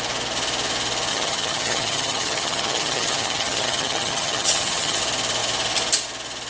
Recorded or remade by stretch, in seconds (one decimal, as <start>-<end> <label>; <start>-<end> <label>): 0.0-1.1 recorded; 1.1-5.0 remade; 5.0-6.5 recorded